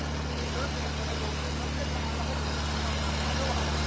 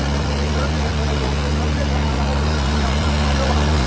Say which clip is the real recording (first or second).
first